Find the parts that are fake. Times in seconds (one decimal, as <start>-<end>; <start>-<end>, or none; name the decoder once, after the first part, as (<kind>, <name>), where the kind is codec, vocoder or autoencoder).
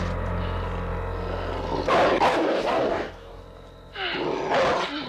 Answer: 2.3-3.4 (codec, DAC)